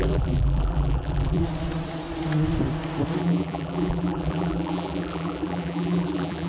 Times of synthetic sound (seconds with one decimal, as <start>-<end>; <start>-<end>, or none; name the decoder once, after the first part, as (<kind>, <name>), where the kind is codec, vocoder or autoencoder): 0.0-1.4 (vocoder, BigVGAN v2); 3.2-6.5